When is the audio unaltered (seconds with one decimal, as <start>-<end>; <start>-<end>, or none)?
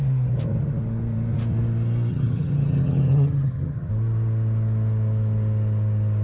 0.0-2.1; 3.9-6.2